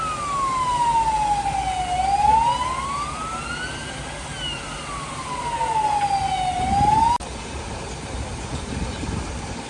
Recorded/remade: recorded